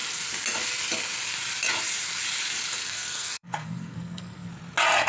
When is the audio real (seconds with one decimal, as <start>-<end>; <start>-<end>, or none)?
0.0-2.8; 4.5-5.1

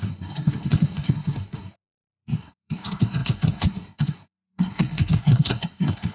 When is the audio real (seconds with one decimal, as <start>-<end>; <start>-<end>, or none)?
none

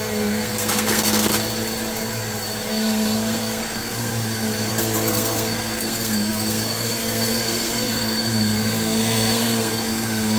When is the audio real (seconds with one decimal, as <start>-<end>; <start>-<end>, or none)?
1.3-2.7; 4.1-4.7

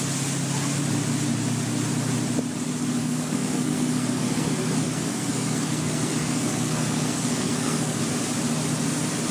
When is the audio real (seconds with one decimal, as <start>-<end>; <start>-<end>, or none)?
0.0-3.0; 8.0-9.3

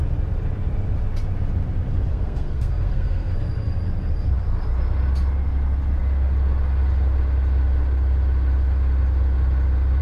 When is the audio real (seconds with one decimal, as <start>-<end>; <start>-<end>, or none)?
0.0-2.1; 3.3-10.0

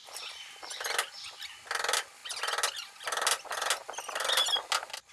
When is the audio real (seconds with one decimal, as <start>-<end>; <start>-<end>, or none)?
0.0-5.1

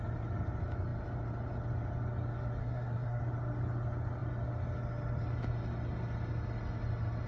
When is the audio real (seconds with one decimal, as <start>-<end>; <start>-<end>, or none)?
0.0-2.6; 3.2-7.3